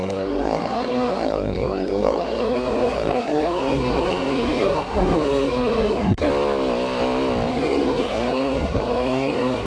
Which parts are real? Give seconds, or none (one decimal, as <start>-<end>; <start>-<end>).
6.3-7.5